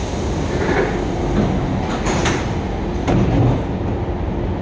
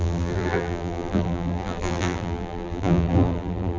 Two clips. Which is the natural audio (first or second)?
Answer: first